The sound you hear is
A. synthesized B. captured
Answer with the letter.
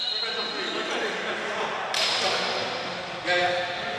B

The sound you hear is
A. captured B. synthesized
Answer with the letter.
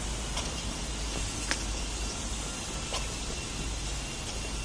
A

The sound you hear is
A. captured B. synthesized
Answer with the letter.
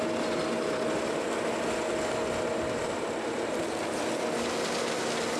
A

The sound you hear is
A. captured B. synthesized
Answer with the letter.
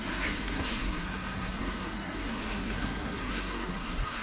B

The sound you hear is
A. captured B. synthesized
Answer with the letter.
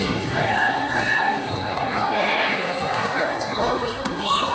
B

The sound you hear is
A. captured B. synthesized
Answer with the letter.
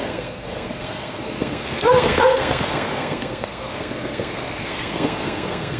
B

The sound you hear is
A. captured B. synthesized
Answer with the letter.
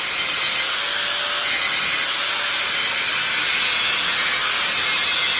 A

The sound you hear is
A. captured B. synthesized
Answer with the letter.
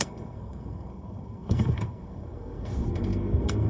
B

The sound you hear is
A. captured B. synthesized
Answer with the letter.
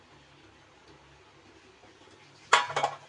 A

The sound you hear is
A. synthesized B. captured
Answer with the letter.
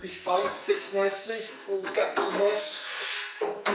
A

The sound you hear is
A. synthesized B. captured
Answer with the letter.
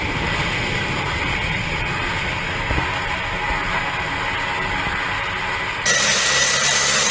B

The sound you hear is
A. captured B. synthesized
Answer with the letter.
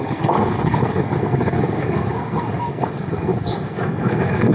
B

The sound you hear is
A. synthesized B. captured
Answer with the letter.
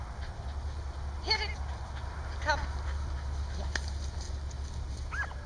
B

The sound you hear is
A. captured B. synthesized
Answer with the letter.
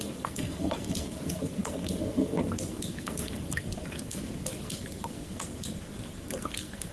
B